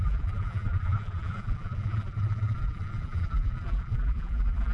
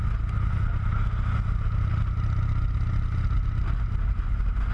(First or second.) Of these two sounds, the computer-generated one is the first